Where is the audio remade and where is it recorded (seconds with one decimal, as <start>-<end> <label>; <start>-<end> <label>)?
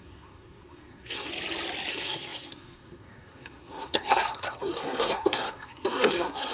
0.0-1.3 remade; 1.3-1.9 recorded; 1.9-6.5 remade